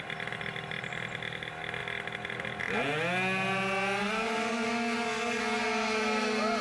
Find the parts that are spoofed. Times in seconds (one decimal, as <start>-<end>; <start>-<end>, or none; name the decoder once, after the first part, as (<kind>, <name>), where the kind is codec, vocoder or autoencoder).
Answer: 4.0-5.4 (codec, SNAC)